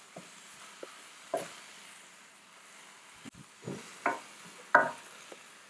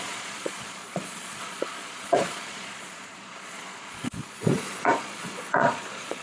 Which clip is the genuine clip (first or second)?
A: first